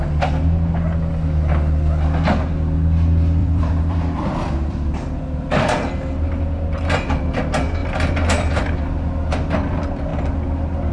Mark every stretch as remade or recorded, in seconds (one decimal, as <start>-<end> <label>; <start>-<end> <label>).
0.0-3.4 recorded; 3.4-5.9 remade; 5.9-7.8 recorded; 7.8-8.8 remade; 8.8-10.9 recorded

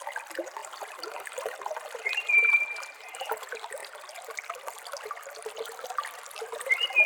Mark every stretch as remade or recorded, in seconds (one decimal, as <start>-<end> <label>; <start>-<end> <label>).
0.0-0.6 recorded; 0.6-3.3 remade; 3.3-7.1 recorded

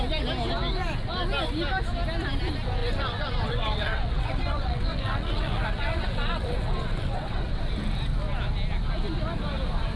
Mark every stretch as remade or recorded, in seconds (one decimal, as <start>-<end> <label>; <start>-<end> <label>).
0.0-2.8 recorded; 2.8-7.6 remade; 7.6-10.0 recorded

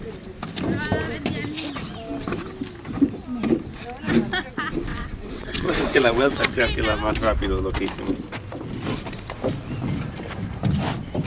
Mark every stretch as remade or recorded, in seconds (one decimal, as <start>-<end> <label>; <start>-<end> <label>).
0.0-4.9 recorded; 4.9-6.6 remade; 6.6-11.3 recorded

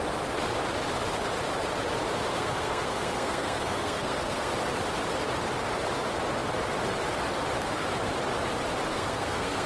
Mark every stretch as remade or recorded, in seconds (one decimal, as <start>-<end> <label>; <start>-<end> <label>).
0.0-2.3 recorded; 2.3-4.5 remade; 4.5-8.9 recorded; 8.9-9.7 remade